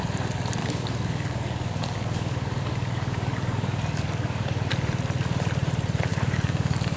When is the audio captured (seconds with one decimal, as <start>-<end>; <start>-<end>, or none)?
0.0-0.6; 4.7-6.1